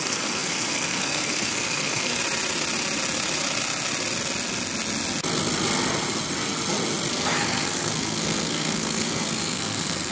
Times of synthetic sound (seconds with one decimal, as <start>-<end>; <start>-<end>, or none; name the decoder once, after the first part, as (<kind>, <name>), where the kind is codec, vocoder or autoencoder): 0.0-2.2 (codec, SNAC); 7.1-10.1